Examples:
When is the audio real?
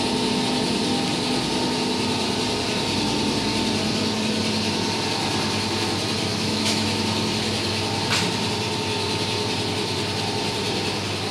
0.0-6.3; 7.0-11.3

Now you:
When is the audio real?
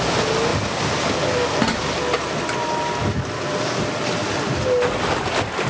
0.0-5.7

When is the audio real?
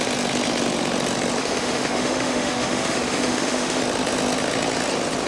0.0-1.4; 3.8-5.3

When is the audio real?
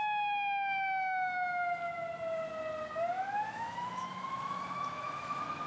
0.0-3.1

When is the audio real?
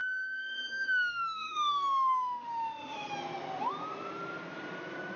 3.1-5.2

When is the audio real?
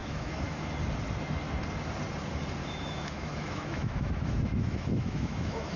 0.7-2.6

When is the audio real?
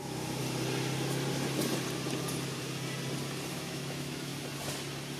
0.4-3.5; 4.3-5.2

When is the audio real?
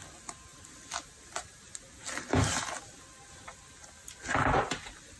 0.0-5.2